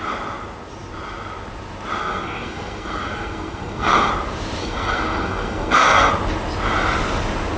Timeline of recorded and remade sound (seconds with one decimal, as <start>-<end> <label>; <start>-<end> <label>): 0.0-2.0 recorded; 2.0-4.1 remade; 4.1-4.6 recorded; 4.6-6.1 remade; 6.1-7.6 recorded